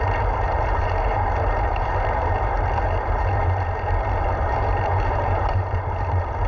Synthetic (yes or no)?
yes